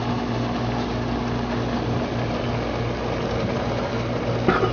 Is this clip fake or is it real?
real